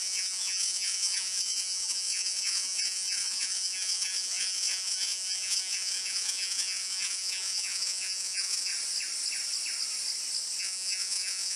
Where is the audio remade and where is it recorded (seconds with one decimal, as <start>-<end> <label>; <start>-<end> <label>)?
0.0-8.7 remade; 8.7-10.6 recorded; 10.6-11.6 remade